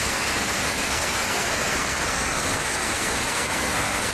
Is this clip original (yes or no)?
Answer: no